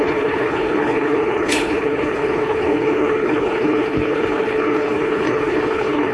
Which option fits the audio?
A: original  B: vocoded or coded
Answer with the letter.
B